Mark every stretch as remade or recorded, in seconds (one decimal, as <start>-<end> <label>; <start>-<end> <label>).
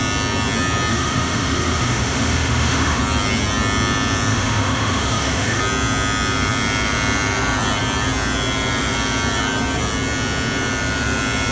0.0-0.9 recorded; 0.9-3.0 remade; 3.0-4.3 recorded; 4.3-5.6 remade; 5.6-11.5 recorded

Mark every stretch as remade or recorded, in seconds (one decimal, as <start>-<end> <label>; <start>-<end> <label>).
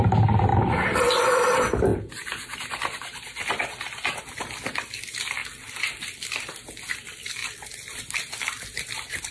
0.0-0.5 remade; 0.5-1.0 recorded; 1.0-9.3 remade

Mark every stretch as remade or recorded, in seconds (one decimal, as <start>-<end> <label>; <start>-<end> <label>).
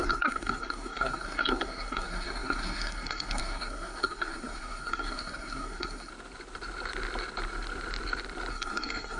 0.0-6.1 remade; 6.1-8.5 recorded; 8.5-9.2 remade